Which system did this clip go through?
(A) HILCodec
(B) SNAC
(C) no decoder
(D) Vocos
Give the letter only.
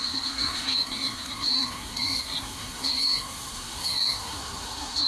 B